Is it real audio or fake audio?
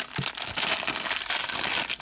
real